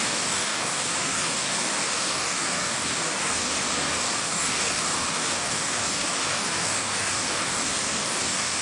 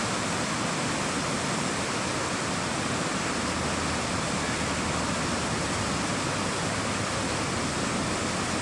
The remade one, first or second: first